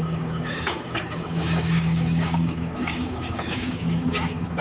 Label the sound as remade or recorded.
remade